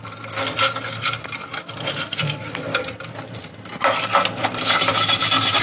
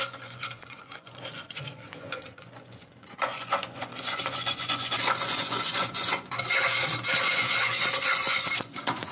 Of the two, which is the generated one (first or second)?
second